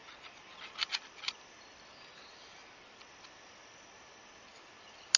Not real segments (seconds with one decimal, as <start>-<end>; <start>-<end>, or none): 3.6-4.2